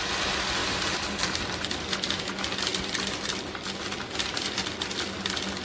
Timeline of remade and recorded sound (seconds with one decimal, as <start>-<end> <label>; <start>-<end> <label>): 0.0-0.6 recorded; 0.6-1.4 remade; 1.4-5.6 recorded